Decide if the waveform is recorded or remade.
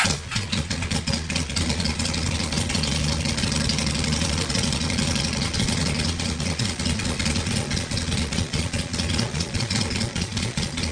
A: remade